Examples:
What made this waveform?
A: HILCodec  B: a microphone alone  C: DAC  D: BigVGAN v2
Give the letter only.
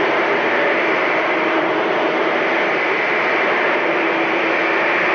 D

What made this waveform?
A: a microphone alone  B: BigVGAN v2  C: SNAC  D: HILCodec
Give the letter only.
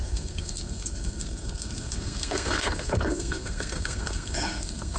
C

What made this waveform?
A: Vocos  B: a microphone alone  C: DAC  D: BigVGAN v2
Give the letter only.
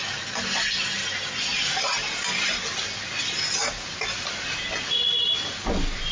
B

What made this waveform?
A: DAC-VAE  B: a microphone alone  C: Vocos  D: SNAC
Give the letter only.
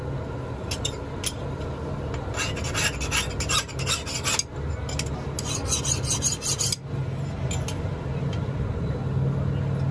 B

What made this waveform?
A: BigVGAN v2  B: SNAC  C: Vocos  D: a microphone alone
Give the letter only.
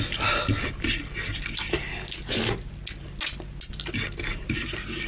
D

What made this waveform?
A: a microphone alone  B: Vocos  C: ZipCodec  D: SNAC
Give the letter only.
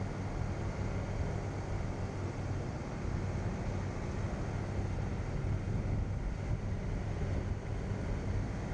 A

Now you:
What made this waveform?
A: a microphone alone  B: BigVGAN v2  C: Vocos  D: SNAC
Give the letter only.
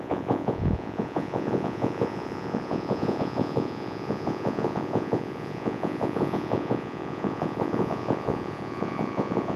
C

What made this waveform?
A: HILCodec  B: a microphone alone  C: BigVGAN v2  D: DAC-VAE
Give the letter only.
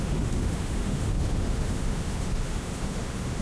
D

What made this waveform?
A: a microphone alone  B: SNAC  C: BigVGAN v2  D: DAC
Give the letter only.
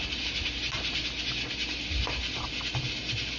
A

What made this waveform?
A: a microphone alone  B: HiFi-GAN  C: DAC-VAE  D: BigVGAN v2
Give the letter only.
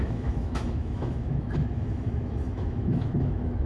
C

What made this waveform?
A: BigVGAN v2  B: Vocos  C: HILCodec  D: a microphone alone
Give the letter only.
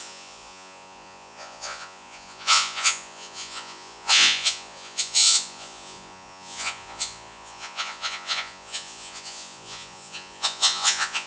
B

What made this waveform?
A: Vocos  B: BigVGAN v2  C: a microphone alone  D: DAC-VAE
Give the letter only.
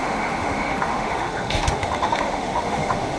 D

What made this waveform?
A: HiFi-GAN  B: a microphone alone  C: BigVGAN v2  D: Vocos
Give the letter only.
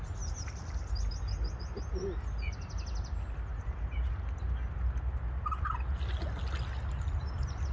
B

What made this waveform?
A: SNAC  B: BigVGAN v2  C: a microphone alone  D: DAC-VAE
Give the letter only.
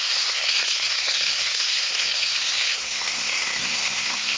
A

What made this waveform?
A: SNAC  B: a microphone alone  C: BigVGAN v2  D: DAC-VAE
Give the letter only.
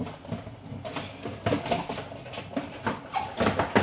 B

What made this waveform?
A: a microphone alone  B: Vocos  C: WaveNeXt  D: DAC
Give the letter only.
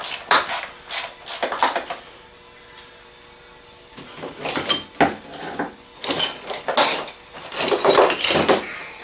A